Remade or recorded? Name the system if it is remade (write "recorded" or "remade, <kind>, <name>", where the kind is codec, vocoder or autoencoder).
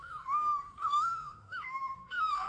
remade, autoencoder, DAC-VAE